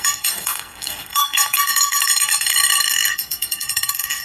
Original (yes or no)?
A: no